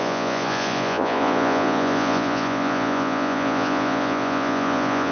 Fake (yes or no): yes